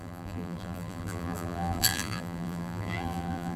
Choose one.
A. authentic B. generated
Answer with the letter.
B